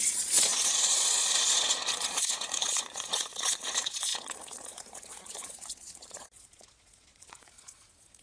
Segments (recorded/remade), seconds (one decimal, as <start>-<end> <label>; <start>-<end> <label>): 0.0-8.2 remade